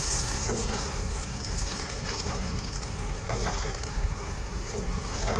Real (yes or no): no